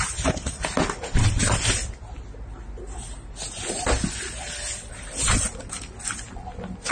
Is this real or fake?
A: real